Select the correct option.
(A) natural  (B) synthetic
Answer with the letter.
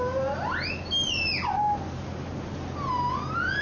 A